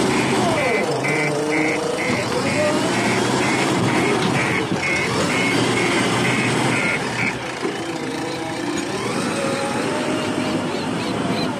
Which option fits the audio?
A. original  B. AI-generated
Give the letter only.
B